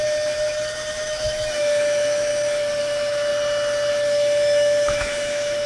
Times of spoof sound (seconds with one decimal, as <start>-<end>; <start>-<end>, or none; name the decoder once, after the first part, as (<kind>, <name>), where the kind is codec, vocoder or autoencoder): 0.0-2.3 (autoencoder, DAC-VAE); 2.8-3.3; 3.9-5.7